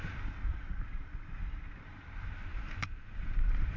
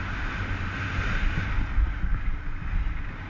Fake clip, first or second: first